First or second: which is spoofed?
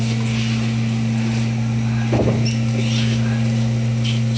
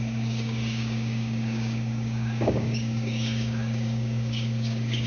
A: second